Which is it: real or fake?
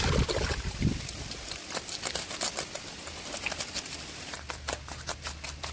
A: real